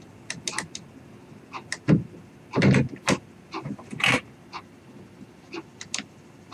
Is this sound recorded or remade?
recorded